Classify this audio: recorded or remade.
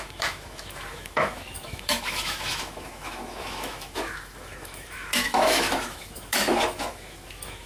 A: remade